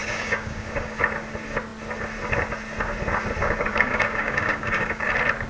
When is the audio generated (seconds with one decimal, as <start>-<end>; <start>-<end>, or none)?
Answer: 0.0-1.0; 3.4-5.1